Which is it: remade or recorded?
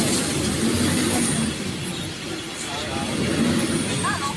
recorded